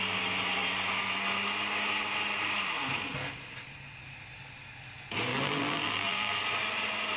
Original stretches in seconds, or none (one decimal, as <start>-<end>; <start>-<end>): 0.0-5.3; 6.3-7.2